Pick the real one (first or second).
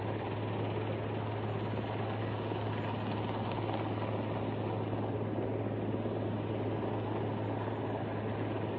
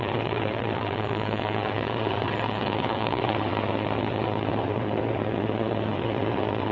first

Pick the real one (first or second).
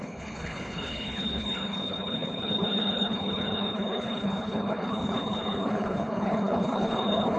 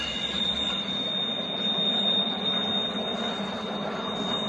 second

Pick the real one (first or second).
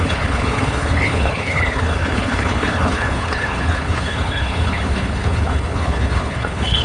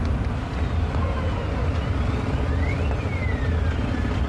second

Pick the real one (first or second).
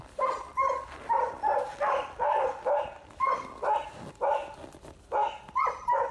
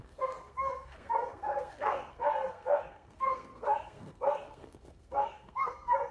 first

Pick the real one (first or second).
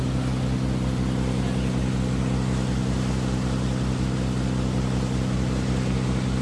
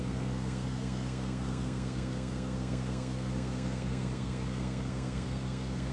first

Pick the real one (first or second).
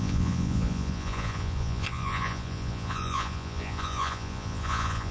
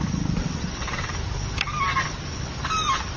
second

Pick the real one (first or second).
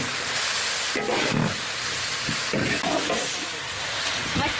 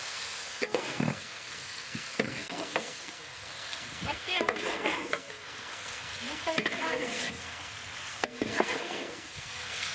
first